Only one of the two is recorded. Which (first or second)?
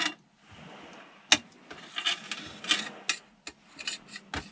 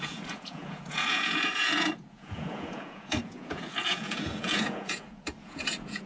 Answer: first